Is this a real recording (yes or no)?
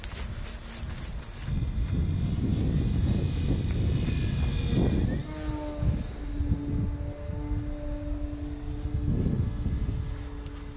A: yes